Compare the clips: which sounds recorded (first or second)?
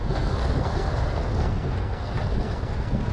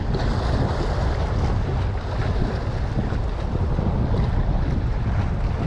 second